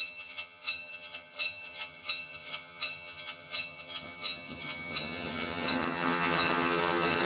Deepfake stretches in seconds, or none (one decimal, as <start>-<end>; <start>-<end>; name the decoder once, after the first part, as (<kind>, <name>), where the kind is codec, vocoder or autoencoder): 0.0-7.3 (vocoder, HiFi-GAN)